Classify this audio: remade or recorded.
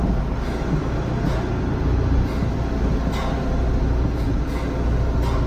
recorded